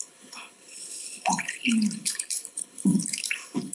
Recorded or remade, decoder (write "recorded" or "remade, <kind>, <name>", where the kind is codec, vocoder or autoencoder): remade, codec, HILCodec